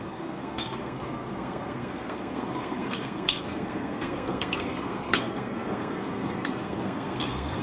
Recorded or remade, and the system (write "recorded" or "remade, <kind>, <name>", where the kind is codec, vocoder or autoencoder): remade, codec, SNAC